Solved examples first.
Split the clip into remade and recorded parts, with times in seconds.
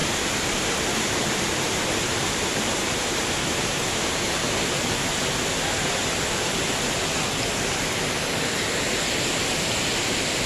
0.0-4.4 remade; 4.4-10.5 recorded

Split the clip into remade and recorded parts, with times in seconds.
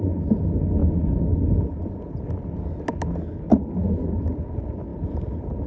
0.0-5.7 recorded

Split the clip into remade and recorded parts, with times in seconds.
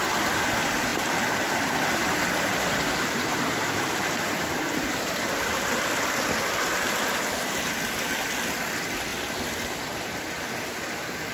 0.0-11.3 recorded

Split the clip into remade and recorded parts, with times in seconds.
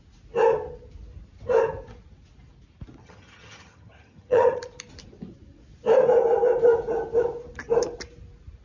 0.0-3.0 recorded; 3.0-4.6 remade; 4.6-8.6 recorded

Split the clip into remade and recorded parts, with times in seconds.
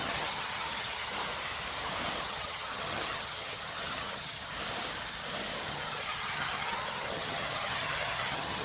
0.0-1.1 remade; 1.1-2.2 recorded; 2.2-4.5 remade; 4.5-5.7 recorded; 5.7-8.6 remade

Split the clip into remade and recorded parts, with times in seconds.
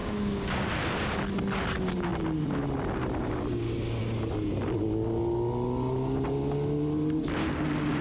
0.0-0.7 remade; 0.7-8.0 recorded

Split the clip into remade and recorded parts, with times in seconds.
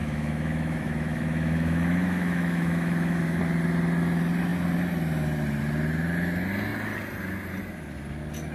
0.0-3.4 remade; 3.4-8.5 recorded